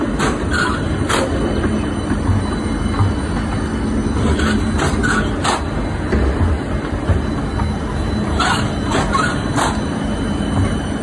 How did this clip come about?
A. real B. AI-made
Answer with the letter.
A